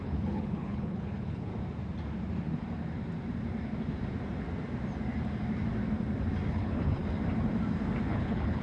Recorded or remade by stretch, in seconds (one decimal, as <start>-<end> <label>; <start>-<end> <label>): 0.0-1.5 remade; 1.5-6.5 recorded; 6.5-7.0 remade; 7.0-8.1 recorded; 8.1-8.6 remade